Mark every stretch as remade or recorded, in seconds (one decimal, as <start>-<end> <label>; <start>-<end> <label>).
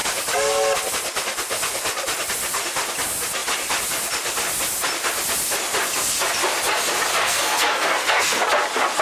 0.0-7.1 recorded; 7.1-8.4 remade; 8.4-9.0 recorded